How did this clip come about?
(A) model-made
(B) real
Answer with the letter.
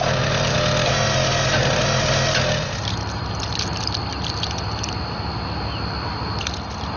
B